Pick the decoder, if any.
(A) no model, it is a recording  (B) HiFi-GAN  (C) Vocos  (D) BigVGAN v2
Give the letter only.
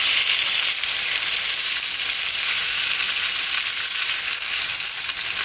D